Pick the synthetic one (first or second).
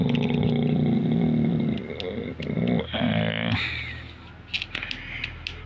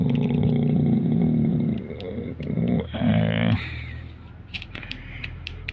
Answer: second